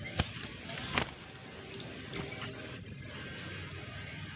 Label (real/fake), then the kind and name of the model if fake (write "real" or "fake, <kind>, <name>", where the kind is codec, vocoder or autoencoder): real